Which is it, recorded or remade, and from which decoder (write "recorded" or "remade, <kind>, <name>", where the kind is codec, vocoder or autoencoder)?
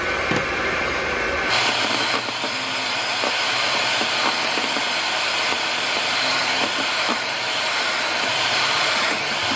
remade, vocoder, BigVGAN v2